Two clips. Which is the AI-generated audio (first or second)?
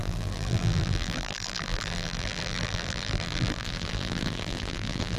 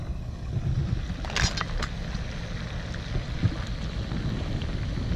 first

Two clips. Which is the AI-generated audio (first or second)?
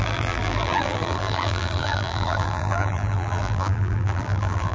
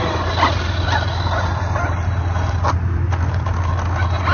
first